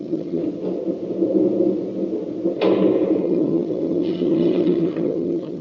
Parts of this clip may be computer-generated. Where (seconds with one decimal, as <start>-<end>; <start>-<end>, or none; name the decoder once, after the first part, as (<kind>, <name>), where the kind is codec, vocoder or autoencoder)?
0.0-0.4 (vocoder, HiFi-GAN); 3.2-5.6